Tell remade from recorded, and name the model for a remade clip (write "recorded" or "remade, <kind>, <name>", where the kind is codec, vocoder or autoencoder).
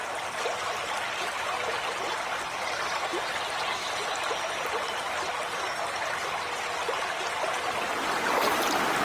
recorded